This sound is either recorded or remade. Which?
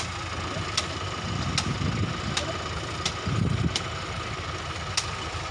recorded